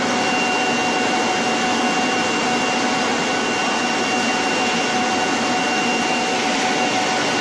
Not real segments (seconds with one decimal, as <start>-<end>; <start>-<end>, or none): none

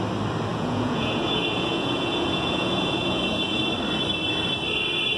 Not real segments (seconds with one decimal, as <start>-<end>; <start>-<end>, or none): 0.5-3.6

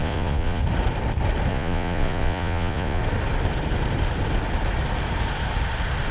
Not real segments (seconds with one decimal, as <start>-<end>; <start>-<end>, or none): 0.0-0.6; 1.5-3.0

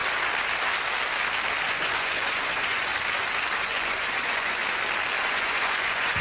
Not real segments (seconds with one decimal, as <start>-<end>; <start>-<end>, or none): 1.7-2.9; 3.6-4.6; 5.2-6.2